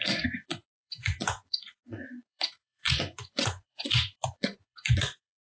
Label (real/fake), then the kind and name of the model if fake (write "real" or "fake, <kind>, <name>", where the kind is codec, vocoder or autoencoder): fake, vocoder, Vocos